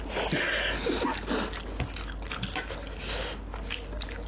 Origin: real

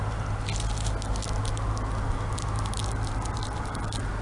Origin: real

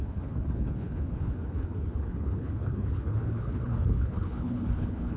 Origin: fake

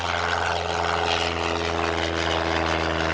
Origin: real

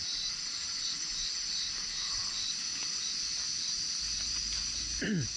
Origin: real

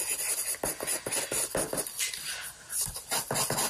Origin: real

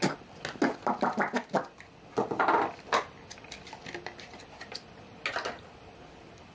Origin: real